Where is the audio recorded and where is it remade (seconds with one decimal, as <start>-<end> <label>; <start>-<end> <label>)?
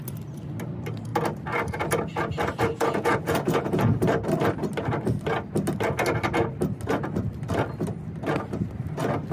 0.0-2.7 recorded; 2.7-4.0 remade; 4.0-9.3 recorded